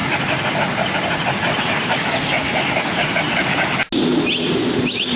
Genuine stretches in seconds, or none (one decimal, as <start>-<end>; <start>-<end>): 0.0-5.2